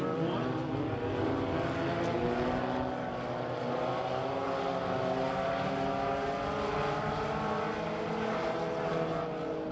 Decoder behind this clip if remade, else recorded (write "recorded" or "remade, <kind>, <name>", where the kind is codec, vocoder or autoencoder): recorded